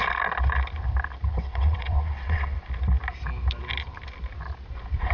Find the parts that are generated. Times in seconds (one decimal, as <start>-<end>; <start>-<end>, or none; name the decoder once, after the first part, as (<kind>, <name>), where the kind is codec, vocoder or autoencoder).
1.3-2.6 (vocoder, WaveNeXt)